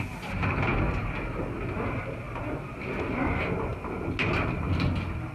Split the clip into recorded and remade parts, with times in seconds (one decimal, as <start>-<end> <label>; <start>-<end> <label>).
0.0-5.3 recorded